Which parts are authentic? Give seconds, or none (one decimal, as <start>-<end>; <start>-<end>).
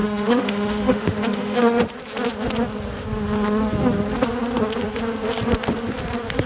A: 1.9-6.5